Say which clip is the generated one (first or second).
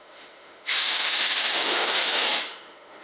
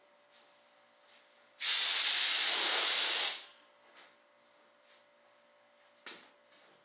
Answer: first